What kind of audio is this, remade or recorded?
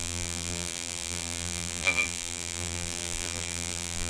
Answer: remade